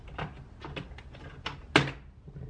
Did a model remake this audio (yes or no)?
no